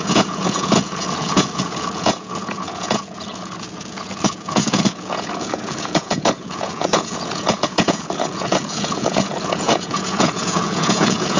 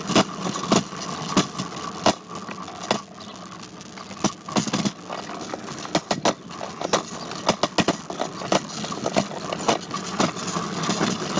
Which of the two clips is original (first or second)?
second